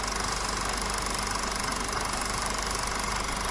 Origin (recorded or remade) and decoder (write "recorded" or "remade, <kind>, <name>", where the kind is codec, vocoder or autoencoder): recorded